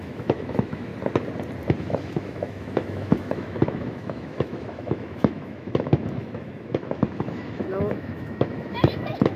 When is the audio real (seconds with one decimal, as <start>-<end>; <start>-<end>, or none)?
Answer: 0.9-1.8